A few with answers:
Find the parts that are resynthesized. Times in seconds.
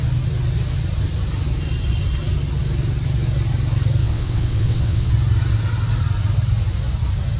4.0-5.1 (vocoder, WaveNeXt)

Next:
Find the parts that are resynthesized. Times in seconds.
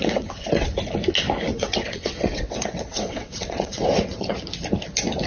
0.0-0.7 (vocoder, WaveNeXt); 1.5-4.3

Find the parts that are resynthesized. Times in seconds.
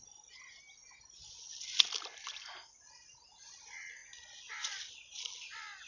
none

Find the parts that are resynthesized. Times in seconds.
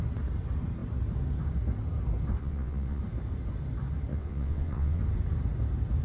2.4-3.0 (vocoder, WaveNeXt); 4.1-5.0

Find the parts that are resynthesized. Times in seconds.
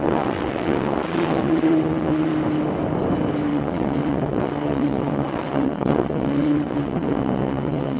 0.0-2.3 (vocoder, WaveNeXt); 3.5-8.0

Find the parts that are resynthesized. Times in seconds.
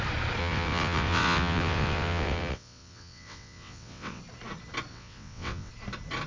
0.4-4.2 (vocoder, WaveNeXt); 4.9-5.7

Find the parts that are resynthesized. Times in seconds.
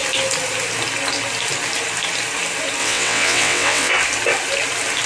2.8-3.9 (vocoder, WaveNeXt)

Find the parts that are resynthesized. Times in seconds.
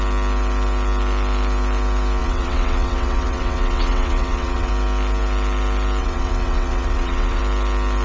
2.2-4.7 (vocoder, WaveNeXt); 6.0-7.4